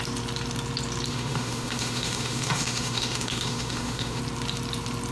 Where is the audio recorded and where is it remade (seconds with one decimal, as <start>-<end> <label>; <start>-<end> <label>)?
0.0-1.1 recorded; 1.1-4.2 remade; 4.2-5.1 recorded